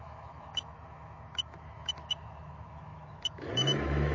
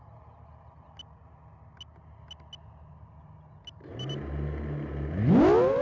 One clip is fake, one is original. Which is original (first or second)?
second